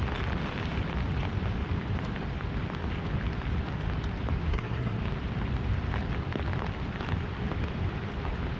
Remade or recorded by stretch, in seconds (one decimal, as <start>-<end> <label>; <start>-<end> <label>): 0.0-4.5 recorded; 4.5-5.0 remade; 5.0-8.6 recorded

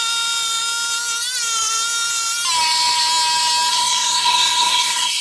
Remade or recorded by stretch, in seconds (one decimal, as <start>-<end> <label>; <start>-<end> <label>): 0.0-3.7 recorded; 3.7-5.2 remade

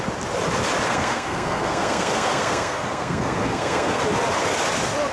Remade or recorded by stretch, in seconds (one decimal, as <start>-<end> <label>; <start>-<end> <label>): 0.0-0.9 recorded; 0.9-4.0 remade; 4.0-5.1 recorded

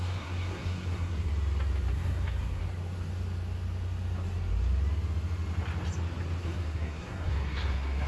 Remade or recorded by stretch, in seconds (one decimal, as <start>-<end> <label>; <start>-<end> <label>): 0.0-1.3 remade; 1.3-1.9 recorded; 1.9-2.6 remade; 2.6-6.4 recorded; 6.4-8.1 remade

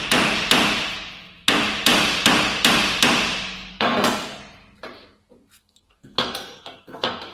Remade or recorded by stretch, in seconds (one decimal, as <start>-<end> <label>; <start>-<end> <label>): 0.0-3.7 recorded; 3.7-4.4 remade; 4.4-5.6 recorded; 5.6-7.3 remade

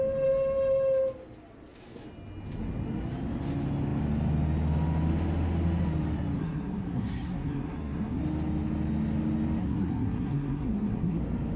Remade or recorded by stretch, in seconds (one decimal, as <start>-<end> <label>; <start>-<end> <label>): 0.0-6.4 recorded; 6.4-8.2 remade; 8.2-9.6 recorded; 9.6-11.2 remade; 11.2-11.6 recorded

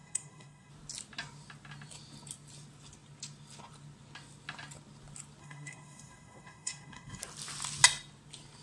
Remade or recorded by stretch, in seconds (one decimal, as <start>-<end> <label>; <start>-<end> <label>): 0.0-0.7 remade; 0.7-5.4 recorded; 5.4-7.2 remade; 7.2-8.6 recorded